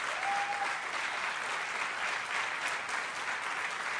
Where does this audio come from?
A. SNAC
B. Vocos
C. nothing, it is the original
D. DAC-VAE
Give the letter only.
C